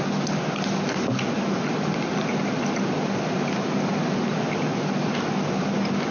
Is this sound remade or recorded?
recorded